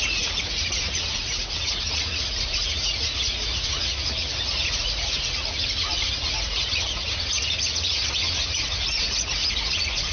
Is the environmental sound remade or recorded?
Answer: remade